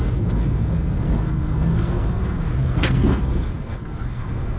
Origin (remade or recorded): remade